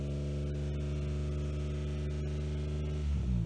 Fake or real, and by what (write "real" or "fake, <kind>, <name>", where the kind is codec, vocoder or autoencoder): real